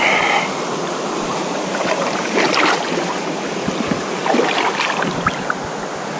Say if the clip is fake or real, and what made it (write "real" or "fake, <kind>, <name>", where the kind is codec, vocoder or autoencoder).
real